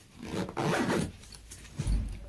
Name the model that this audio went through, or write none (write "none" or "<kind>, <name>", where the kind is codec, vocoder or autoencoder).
none